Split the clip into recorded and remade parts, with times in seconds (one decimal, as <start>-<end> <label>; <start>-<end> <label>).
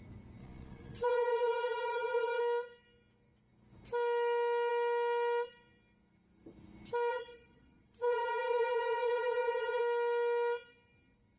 0.0-0.4 recorded; 0.4-2.4 remade; 2.4-7.1 recorded; 7.1-9.8 remade; 9.8-11.4 recorded